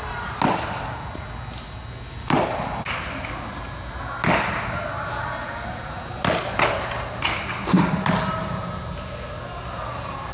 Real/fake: real